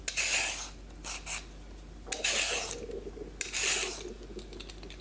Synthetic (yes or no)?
no